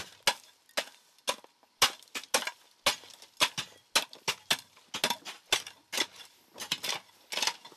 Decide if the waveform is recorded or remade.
recorded